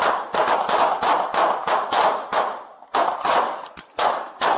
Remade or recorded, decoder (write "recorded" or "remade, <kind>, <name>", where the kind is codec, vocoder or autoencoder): recorded